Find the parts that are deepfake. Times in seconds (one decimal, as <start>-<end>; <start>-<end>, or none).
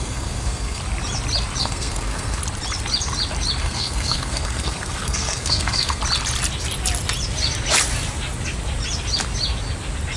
0.0-0.8; 1.6-2.4; 3.6-6.0